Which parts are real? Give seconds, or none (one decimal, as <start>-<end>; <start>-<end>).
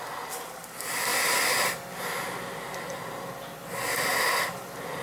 0.0-5.0